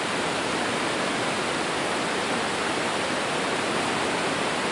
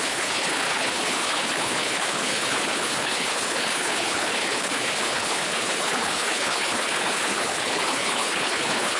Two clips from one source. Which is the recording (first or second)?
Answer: first